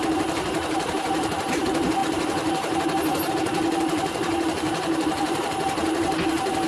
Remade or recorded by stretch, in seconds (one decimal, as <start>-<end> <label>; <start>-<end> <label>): 0.0-6.7 remade